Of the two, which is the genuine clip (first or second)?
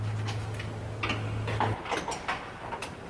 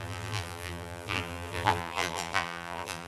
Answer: first